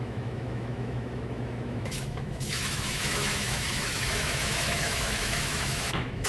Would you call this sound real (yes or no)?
no